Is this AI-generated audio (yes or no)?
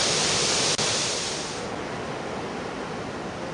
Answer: no